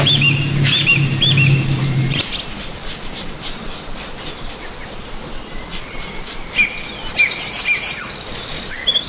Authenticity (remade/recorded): recorded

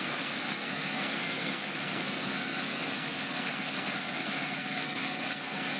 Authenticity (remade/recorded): remade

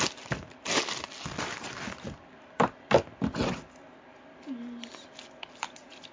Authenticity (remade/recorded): recorded